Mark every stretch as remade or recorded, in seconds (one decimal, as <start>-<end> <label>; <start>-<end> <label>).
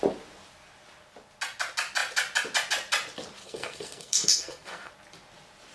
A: 0.0-3.4 recorded; 3.4-4.9 remade; 4.9-5.7 recorded